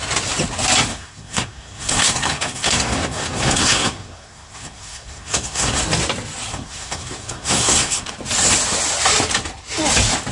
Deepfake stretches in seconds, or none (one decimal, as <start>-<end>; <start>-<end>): 0.9-5.8; 6.5-8.1